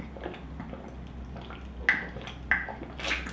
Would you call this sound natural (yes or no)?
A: yes